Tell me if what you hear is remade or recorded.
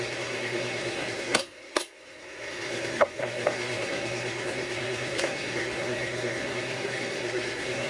remade